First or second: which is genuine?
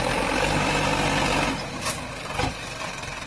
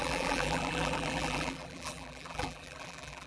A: first